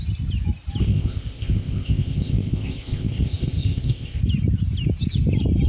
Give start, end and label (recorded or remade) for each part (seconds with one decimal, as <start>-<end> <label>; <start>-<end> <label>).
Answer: 0.0-0.8 recorded; 0.8-4.2 remade; 4.2-5.7 recorded

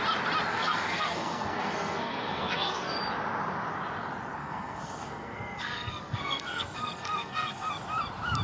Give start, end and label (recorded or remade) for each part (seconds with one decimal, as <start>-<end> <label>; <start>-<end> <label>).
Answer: 0.0-0.5 recorded; 0.5-3.0 remade; 3.0-4.4 recorded; 4.4-7.7 remade; 7.7-8.4 recorded

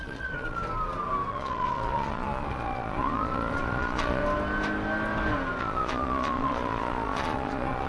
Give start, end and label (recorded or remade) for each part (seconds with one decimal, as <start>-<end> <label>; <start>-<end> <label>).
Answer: 0.0-0.6 remade; 0.6-1.3 recorded; 1.3-4.2 remade; 4.2-5.6 recorded; 5.6-7.9 remade

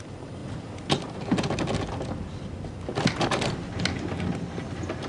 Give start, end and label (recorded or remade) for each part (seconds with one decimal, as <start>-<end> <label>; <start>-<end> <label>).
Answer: 0.0-5.1 recorded

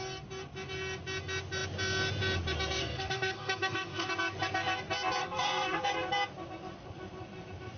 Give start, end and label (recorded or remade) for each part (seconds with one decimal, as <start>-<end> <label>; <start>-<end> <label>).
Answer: 0.0-2.8 recorded; 2.8-4.1 remade; 4.1-5.2 recorded; 5.2-5.9 remade; 5.9-7.8 recorded

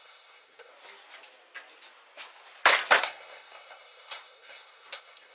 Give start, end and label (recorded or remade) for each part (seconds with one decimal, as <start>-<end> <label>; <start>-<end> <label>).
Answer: 0.0-0.7 remade; 0.7-3.0 recorded; 3.0-5.3 remade

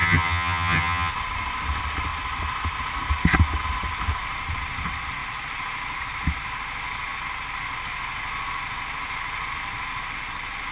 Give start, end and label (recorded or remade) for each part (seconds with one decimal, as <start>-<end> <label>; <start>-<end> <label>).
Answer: 0.0-1.1 remade; 1.1-10.7 recorded

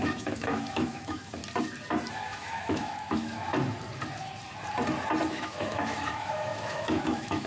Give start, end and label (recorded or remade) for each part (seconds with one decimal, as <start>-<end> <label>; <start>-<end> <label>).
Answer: 0.0-1.4 remade; 1.4-2.1 recorded; 2.1-3.5 remade; 3.5-5.3 recorded; 5.3-7.5 remade